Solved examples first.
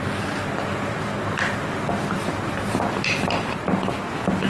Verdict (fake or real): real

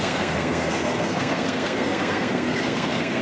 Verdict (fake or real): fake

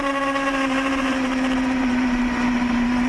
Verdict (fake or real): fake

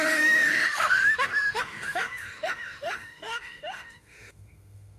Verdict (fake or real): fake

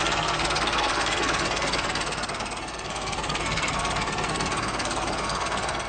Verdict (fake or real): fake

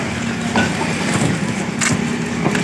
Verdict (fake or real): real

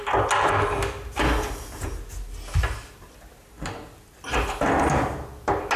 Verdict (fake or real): real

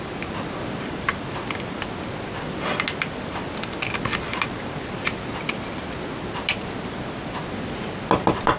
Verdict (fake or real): real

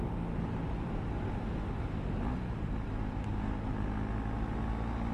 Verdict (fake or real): real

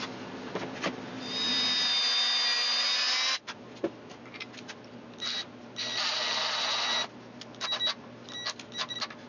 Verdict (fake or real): real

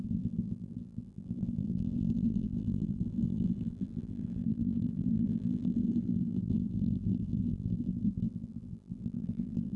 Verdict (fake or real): fake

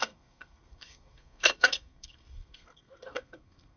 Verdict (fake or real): fake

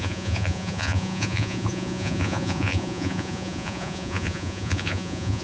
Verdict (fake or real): fake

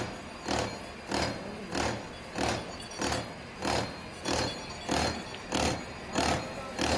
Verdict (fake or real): real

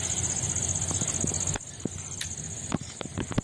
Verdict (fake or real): real